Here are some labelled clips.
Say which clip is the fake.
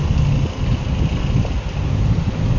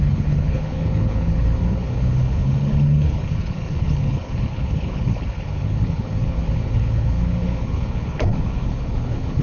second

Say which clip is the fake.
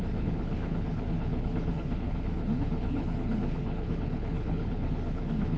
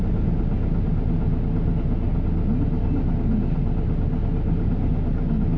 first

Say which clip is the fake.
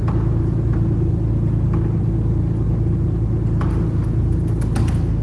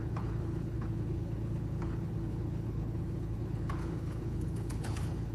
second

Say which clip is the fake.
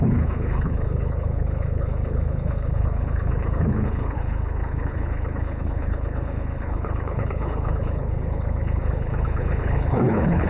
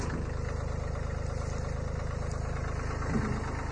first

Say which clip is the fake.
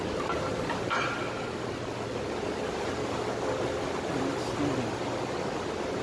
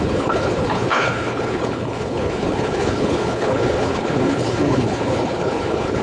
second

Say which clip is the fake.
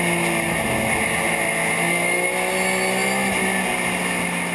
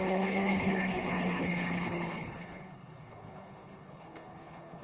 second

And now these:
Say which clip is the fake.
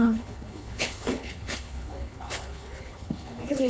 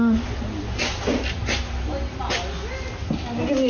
first